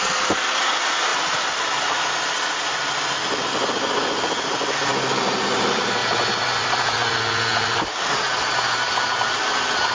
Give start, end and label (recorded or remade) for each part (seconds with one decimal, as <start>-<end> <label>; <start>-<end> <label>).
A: 0.0-9.9 recorded